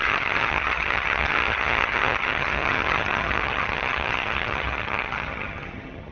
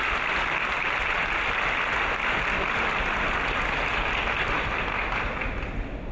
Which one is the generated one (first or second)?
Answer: first